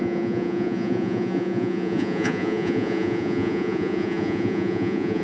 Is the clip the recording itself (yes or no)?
no